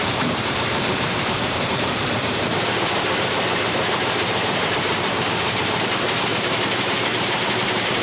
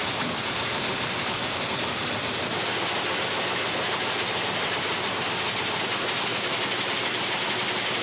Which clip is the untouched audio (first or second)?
second